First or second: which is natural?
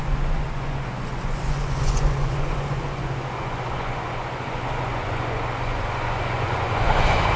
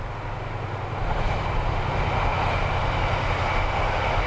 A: second